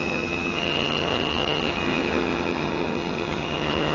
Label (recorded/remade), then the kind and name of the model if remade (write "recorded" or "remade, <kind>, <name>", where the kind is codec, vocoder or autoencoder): remade, vocoder, HiFi-GAN